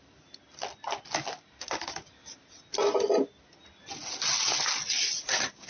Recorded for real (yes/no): yes